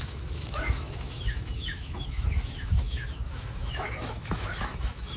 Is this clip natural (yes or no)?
no